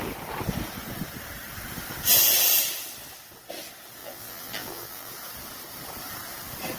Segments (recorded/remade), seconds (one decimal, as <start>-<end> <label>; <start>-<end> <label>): 0.0-4.0 recorded; 4.0-5.1 remade; 5.1-6.8 recorded